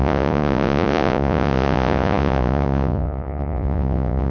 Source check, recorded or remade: remade